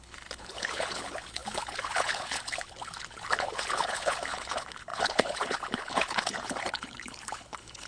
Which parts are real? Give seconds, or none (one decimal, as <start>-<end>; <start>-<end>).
none